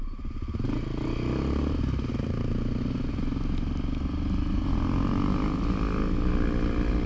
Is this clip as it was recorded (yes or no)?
yes